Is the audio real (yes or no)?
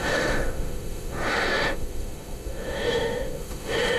no